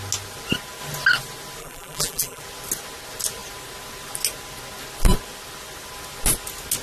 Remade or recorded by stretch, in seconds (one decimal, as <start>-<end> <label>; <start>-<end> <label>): 0.0-1.6 recorded; 1.6-2.4 remade; 2.4-6.8 recorded